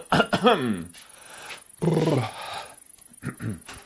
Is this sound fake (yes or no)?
no